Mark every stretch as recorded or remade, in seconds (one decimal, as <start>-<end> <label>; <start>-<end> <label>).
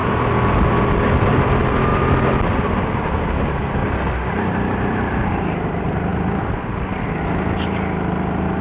0.0-0.7 remade; 0.7-1.9 recorded; 1.9-3.1 remade; 3.1-3.8 recorded; 3.8-5.1 remade; 5.1-8.6 recorded